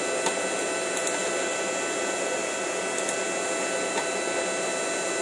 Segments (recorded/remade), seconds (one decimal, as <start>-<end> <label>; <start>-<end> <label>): 0.0-5.2 recorded